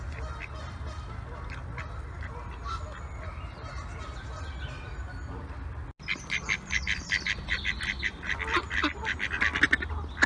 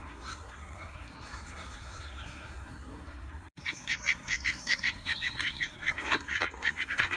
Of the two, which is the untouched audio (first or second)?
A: first